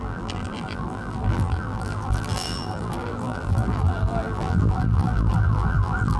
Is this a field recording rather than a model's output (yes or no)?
no